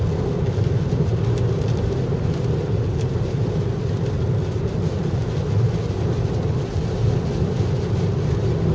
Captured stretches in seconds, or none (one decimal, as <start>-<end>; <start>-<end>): 0.0-8.7